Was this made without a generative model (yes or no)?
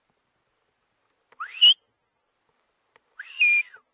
yes